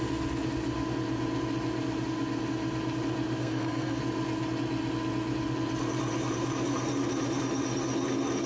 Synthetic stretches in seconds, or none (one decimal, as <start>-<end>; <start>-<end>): 3.4-4.0